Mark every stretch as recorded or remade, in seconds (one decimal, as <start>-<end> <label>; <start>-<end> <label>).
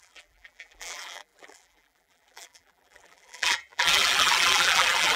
0.0-5.2 remade